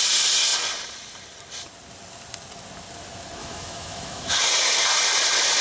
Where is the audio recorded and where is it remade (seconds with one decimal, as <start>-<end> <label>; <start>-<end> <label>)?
0.0-3.4 recorded; 3.4-4.4 remade; 4.4-5.6 recorded